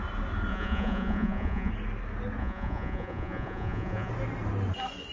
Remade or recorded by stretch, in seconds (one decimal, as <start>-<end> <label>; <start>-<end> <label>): 0.0-0.5 recorded; 0.5-1.7 remade; 1.7-2.4 recorded; 2.4-4.1 remade; 4.1-5.1 recorded